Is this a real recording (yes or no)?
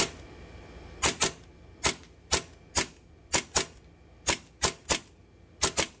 yes